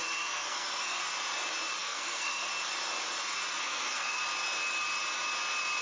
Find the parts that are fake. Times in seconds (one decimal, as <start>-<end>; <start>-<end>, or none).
0.0-1.0; 1.8-2.5; 3.6-4.2